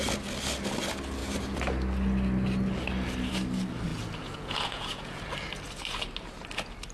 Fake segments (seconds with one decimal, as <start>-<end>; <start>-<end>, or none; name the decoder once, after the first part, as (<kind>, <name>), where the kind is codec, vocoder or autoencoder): 3.9-5.3 (vocoder, Vocos)